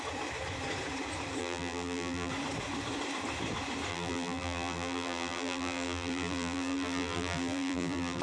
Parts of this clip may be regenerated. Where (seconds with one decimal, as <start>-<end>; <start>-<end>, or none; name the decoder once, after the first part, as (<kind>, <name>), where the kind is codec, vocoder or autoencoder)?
1.4-2.3 (vocoder, BigVGAN v2); 3.9-8.2